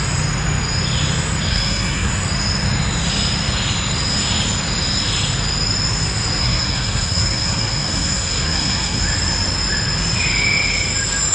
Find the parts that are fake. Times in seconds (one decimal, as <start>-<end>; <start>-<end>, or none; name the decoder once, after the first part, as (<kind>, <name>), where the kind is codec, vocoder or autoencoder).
1.5-2.1 (codec, SNAC); 6.4-9.0